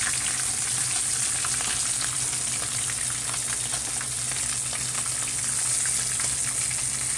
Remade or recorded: recorded